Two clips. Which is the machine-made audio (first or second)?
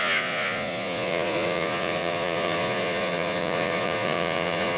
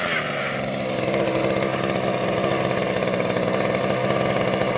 first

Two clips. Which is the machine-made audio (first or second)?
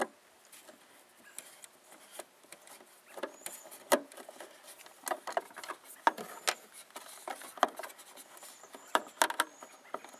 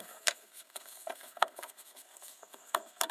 second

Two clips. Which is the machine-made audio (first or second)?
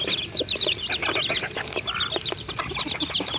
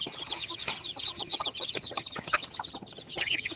second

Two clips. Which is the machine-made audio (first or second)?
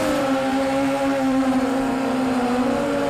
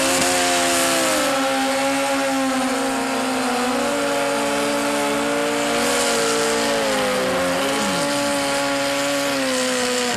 first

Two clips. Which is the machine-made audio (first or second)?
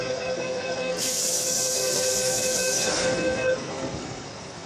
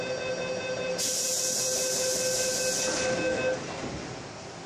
first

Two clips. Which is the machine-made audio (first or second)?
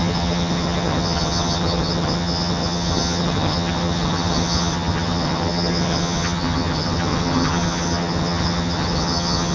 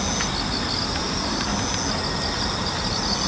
first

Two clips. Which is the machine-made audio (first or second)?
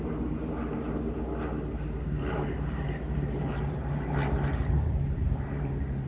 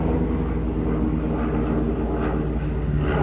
first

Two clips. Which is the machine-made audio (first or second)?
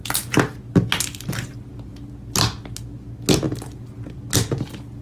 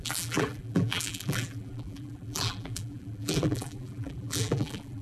second